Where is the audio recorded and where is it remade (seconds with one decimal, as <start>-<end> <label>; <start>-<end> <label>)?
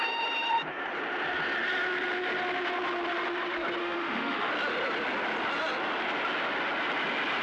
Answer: 0.0-3.8 recorded; 3.8-4.5 remade; 4.5-7.4 recorded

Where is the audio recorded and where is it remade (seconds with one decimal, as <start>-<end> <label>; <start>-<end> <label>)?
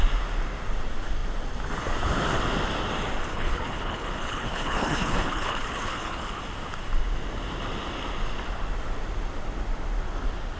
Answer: 0.0-3.3 recorded; 3.3-6.4 remade; 6.4-10.6 recorded